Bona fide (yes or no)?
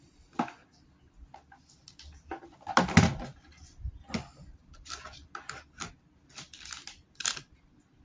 yes